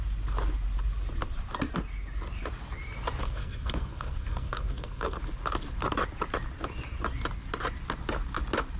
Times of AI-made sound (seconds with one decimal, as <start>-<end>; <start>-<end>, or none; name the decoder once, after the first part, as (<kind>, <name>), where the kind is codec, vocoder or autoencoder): 3.2-5.2 (codec, SNAC)